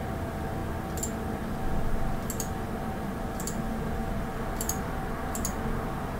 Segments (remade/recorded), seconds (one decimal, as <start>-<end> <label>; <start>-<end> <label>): 0.0-6.2 recorded